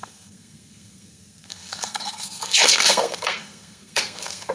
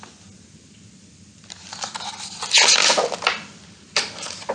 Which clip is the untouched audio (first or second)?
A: second